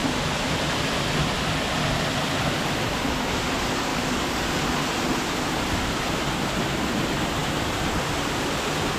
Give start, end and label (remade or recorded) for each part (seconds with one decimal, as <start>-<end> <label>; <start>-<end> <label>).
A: 0.0-3.9 recorded; 3.9-4.6 remade; 4.6-9.0 recorded